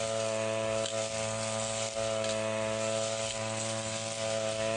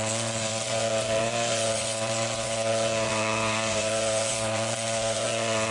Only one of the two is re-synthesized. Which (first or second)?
second